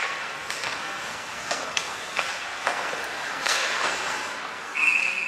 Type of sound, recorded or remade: remade